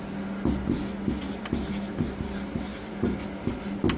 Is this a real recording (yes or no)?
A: yes